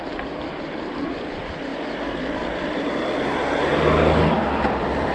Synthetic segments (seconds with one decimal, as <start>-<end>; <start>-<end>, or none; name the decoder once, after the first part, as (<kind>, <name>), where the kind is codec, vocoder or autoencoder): 0.0-1.7 (vocoder, BigVGAN v2); 2.2-3.7; 4.3-5.1